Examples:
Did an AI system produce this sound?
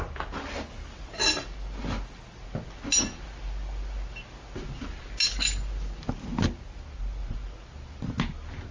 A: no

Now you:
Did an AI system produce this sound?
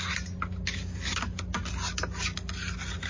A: no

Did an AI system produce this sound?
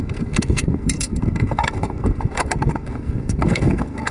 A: yes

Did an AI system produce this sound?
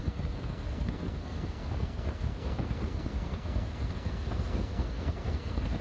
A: yes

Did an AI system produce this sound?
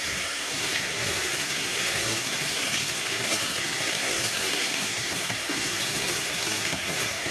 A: yes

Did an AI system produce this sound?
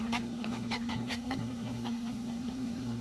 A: yes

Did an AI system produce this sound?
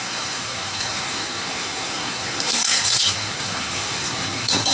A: yes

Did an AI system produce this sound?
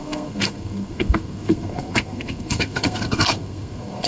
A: yes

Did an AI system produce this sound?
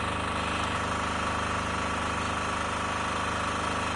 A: no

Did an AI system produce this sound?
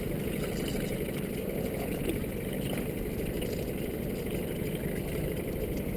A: no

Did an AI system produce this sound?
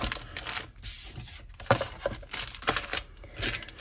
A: no